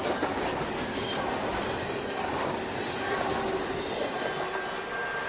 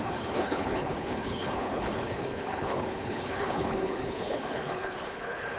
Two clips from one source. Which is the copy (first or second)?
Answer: second